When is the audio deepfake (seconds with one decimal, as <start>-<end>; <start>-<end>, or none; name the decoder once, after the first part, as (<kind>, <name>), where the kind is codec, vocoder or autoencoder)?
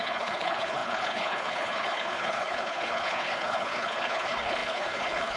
0.0-5.4 (codec, HILCodec)